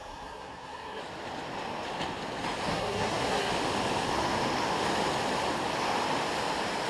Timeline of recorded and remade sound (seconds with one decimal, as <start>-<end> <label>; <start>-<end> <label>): 0.0-1.0 remade; 1.0-2.7 recorded; 2.7-3.5 remade; 3.5-6.9 recorded